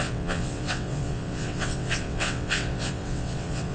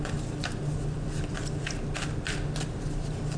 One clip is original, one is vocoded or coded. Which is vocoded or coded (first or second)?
first